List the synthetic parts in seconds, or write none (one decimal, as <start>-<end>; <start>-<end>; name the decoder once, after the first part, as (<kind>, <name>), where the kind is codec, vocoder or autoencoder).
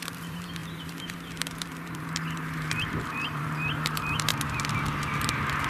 0.0-4.3 (vocoder, BigVGAN v2)